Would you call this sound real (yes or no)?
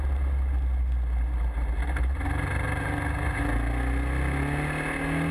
yes